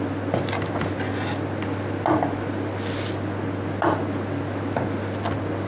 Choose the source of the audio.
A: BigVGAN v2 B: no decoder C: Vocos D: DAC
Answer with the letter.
B